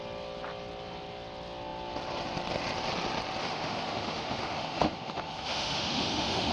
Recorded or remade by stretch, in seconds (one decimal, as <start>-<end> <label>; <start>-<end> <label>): 0.0-3.4 recorded; 3.4-6.5 remade